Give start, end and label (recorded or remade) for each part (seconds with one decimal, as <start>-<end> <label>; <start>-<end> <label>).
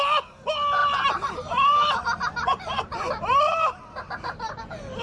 0.0-0.8 recorded; 0.8-3.8 remade; 3.8-5.0 recorded